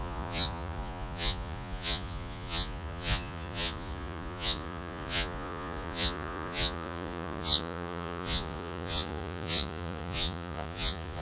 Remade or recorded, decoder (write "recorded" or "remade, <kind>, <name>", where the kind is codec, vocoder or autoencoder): remade, vocoder, Vocos